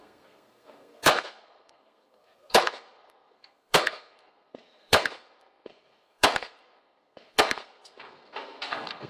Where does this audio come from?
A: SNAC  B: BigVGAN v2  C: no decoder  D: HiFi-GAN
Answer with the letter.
A